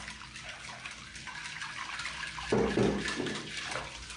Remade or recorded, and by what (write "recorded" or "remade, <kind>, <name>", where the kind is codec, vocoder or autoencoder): recorded